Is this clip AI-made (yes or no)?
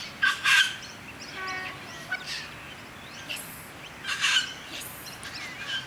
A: no